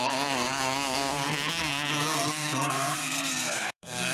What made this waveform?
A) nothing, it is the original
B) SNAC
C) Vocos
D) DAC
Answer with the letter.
B